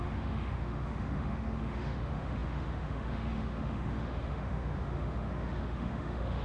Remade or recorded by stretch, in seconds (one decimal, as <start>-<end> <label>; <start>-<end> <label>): 0.0-6.4 remade